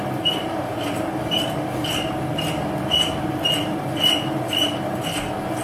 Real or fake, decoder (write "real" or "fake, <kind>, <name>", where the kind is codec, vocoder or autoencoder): real